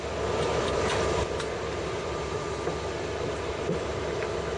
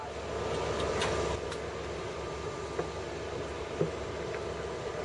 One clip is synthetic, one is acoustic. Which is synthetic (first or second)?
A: first